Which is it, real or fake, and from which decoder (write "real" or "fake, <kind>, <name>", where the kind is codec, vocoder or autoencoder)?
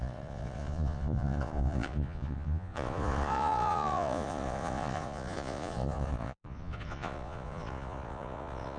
fake, vocoder, Vocos